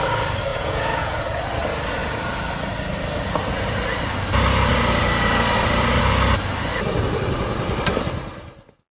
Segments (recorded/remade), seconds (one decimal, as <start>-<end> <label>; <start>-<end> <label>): 0.0-0.5 recorded; 0.5-1.2 remade; 1.2-8.9 recorded